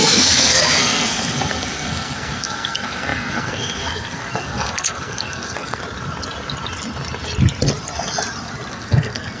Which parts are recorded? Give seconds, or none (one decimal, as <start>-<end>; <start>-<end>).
5.8-8.7